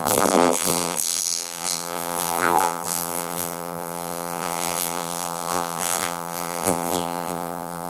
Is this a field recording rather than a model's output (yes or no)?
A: no